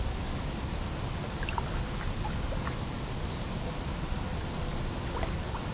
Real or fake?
real